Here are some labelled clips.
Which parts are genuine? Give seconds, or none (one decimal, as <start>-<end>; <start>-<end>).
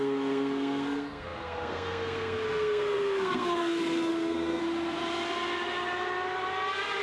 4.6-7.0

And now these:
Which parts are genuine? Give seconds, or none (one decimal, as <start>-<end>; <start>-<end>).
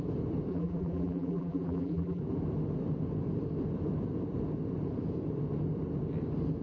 0.0-0.5; 2.2-6.6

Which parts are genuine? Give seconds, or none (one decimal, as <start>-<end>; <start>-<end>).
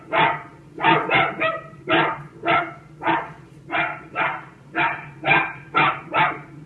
0.0-6.7